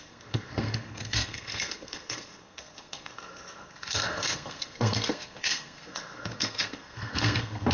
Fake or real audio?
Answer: fake